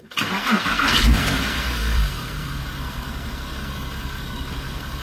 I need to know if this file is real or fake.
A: fake